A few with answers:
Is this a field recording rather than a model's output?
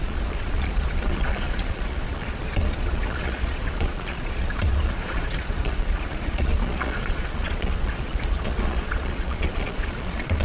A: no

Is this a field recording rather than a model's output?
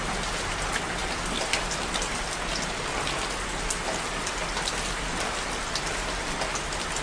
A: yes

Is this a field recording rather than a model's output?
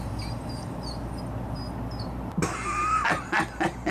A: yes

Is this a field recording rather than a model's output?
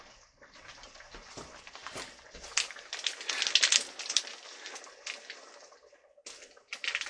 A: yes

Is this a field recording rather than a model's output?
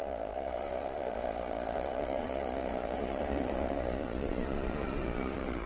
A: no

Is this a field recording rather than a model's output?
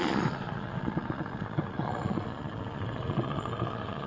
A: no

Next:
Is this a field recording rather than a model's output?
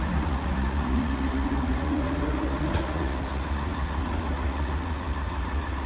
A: no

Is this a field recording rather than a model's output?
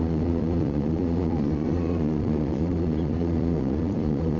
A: no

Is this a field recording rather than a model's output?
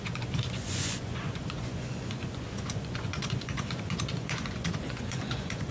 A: no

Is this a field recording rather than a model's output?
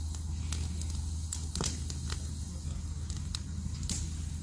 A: yes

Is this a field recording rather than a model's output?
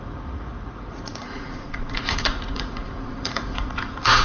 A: no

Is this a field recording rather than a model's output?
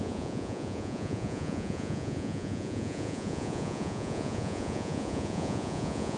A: no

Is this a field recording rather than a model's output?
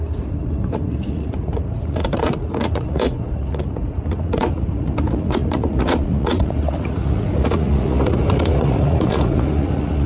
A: no